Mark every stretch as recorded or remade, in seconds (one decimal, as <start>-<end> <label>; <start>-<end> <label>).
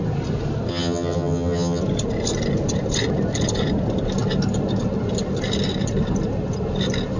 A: 0.0-0.7 recorded; 0.7-1.8 remade; 1.8-7.2 recorded